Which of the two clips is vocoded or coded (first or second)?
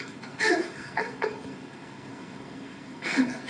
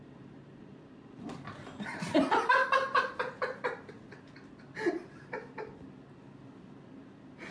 first